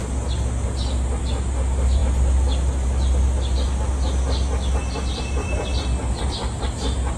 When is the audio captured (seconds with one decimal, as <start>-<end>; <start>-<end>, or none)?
0.0-7.2